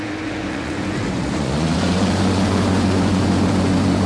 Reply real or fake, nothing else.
fake